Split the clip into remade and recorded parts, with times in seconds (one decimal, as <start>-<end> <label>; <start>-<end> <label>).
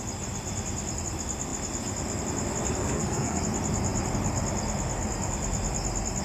0.0-2.8 recorded; 2.8-3.4 remade; 3.4-6.2 recorded